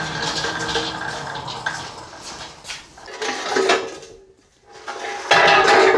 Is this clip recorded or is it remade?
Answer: recorded